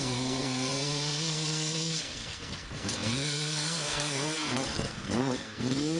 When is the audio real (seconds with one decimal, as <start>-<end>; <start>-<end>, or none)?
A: none